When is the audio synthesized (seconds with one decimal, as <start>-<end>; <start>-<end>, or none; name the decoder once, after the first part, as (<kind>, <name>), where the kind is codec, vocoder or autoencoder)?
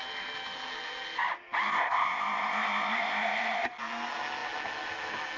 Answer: 1.7-3.7 (codec, ZipCodec)